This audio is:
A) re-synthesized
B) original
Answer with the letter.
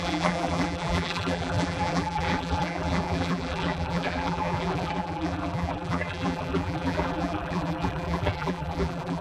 A